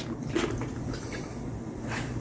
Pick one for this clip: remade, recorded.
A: recorded